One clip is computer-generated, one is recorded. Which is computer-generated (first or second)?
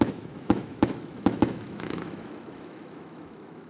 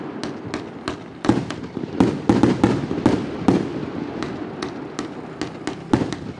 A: first